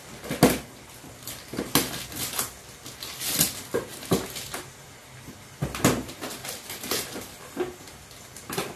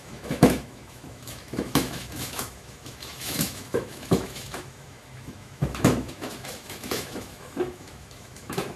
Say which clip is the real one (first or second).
first